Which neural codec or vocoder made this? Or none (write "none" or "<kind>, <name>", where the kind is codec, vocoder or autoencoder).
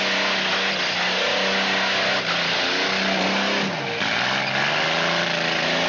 none